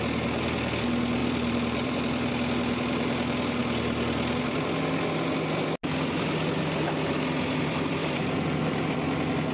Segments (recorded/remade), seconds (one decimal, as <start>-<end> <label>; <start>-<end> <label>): 0.0-1.2 recorded; 1.2-2.3 remade; 2.3-8.0 recorded; 8.0-8.9 remade; 8.9-9.5 recorded